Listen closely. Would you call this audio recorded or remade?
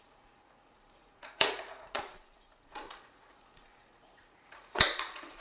remade